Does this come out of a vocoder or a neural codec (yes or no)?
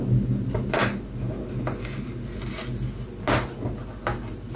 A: no